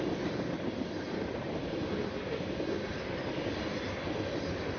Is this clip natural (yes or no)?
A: yes